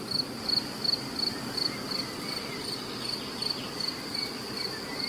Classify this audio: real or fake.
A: real